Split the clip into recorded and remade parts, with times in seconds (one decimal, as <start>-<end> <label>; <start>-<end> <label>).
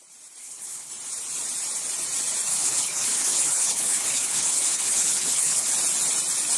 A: 0.0-0.4 recorded; 0.4-0.9 remade; 0.9-2.5 recorded; 2.5-5.7 remade; 5.7-6.6 recorded